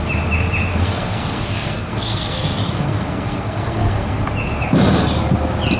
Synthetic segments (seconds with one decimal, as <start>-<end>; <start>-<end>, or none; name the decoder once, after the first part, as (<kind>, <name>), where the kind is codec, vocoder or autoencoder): 0.7-4.2 (codec, SNAC)